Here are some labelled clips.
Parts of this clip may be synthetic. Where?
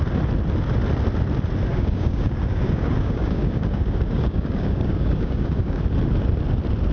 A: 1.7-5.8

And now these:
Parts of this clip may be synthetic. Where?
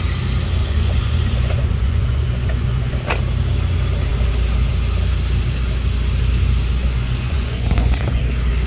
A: 0.6-2.9; 6.8-8.2